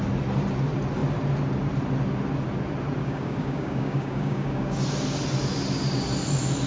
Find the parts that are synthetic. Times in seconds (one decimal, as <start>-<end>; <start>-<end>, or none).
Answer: 3.0-4.8